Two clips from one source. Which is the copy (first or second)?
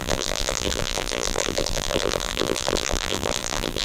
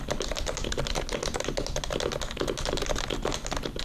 first